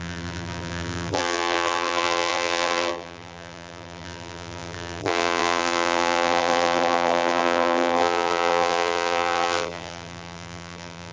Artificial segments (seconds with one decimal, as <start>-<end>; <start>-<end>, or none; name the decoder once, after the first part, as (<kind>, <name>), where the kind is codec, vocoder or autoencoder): 0.0-11.1 (vocoder, BigVGAN v2)